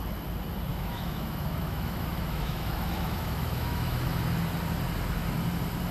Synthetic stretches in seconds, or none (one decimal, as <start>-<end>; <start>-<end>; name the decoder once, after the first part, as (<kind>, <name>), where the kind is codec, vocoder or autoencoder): 0.7-4.2 (autoencoder, DAC-VAE)